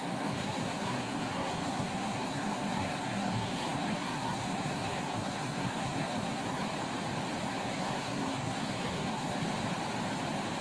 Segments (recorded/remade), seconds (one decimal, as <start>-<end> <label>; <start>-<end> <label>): 0.0-6.7 remade; 6.7-7.5 recorded; 7.5-9.4 remade; 9.4-10.6 recorded